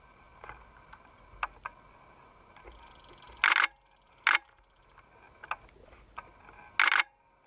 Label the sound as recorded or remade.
recorded